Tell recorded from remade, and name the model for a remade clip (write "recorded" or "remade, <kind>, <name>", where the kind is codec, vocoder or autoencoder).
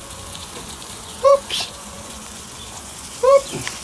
remade, vocoder, Vocos